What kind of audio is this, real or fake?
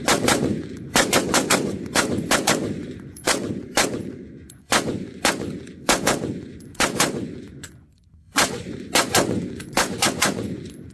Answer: fake